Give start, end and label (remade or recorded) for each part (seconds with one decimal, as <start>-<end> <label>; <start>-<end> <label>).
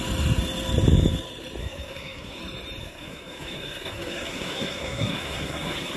0.0-1.6 recorded; 1.6-2.4 remade; 2.4-2.8 recorded; 2.8-6.0 remade